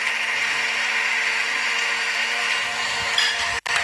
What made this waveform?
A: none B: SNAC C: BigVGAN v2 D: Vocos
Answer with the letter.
A